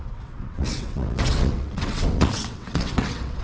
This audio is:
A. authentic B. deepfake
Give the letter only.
B